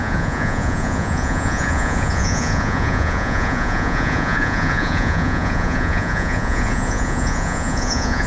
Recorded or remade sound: remade